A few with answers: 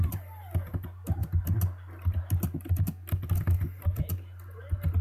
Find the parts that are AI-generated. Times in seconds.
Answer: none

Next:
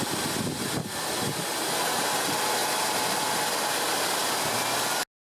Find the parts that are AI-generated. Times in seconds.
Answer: none